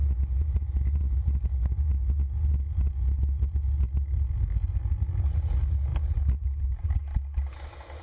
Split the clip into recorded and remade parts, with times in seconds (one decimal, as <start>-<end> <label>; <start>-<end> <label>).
0.0-8.0 recorded

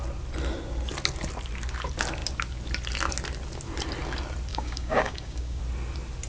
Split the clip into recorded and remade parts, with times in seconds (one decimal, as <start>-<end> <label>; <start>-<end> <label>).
0.0-4.5 recorded; 4.5-5.6 remade; 5.6-6.3 recorded

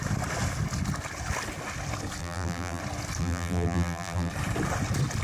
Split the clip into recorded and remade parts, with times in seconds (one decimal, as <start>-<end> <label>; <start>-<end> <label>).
0.0-2.2 recorded; 2.2-2.8 remade; 2.8-3.2 recorded; 3.2-4.3 remade; 4.3-5.2 recorded

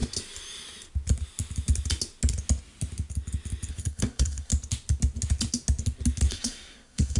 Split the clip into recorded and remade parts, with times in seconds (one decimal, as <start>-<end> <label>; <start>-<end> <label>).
0.0-3.7 recorded; 3.7-4.5 remade; 4.5-6.3 recorded; 6.3-7.2 remade

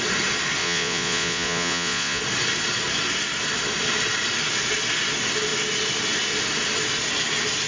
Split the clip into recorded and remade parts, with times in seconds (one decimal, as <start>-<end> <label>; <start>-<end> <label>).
0.0-0.6 recorded; 0.6-2.2 remade; 2.2-7.7 recorded